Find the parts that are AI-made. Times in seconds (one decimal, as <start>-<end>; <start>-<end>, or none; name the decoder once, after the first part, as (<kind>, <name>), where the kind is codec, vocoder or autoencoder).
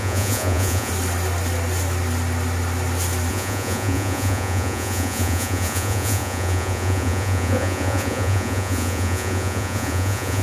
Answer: 0.0-0.9 (vocoder, Vocos); 3.3-10.4